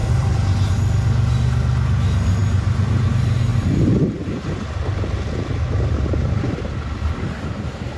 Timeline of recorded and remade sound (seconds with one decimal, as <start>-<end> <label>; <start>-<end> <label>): 0.0-0.7 remade; 0.7-3.5 recorded; 3.5-7.3 remade; 7.3-8.0 recorded